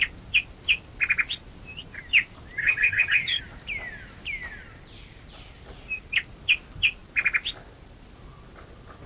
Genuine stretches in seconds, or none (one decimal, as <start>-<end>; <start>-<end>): 0.0-2.6; 3.4-9.1